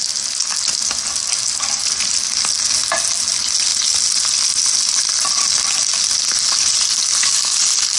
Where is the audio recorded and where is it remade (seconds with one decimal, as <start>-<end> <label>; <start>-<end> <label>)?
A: 0.0-8.0 recorded